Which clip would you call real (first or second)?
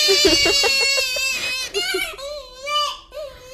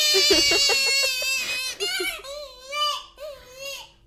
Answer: second